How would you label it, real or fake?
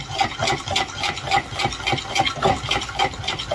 real